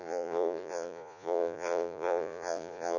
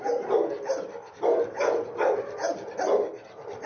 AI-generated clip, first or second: first